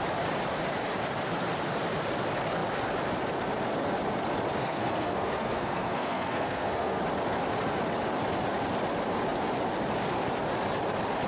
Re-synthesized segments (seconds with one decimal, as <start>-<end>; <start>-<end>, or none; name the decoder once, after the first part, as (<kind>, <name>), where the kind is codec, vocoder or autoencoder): 4.6-7.0 (codec, SNAC)